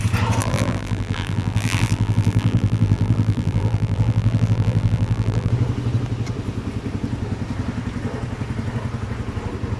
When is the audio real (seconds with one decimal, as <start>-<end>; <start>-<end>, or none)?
0.0-0.4; 5.5-9.8